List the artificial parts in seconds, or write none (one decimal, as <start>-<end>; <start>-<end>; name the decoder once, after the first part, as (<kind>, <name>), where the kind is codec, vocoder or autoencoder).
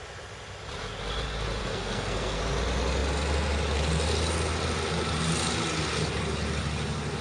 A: 1.6-2.4 (codec, SNAC)